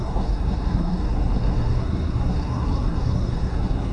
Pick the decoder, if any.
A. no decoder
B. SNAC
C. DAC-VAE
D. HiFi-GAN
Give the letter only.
B